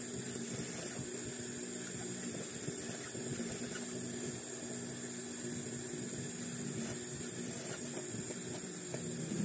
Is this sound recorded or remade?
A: recorded